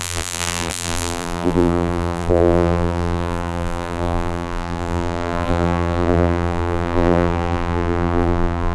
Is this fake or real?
fake